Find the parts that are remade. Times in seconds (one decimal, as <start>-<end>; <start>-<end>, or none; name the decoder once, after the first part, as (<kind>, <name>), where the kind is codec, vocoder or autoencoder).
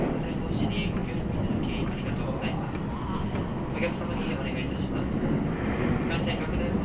none